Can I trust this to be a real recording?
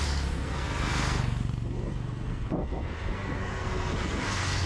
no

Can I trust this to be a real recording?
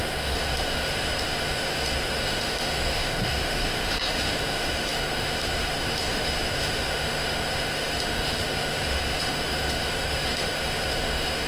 no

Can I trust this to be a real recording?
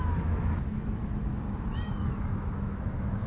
no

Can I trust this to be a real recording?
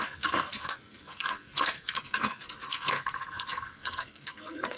no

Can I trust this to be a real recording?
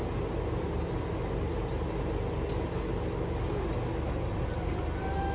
yes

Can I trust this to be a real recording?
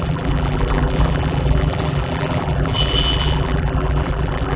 no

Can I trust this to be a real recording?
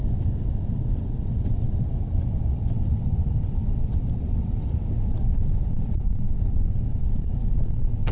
no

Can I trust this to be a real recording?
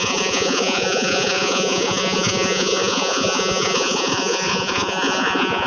no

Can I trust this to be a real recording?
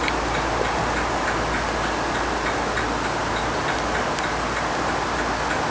yes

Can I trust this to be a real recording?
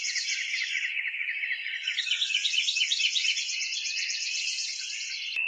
no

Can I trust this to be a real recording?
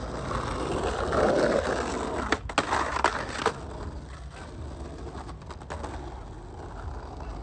yes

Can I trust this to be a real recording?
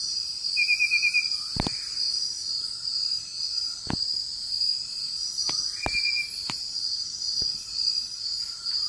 yes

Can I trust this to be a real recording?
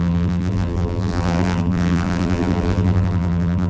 no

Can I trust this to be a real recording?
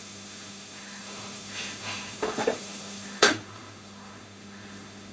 no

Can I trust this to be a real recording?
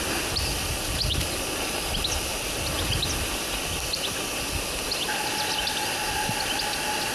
yes